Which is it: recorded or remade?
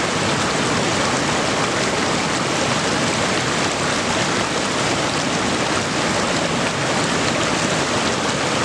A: recorded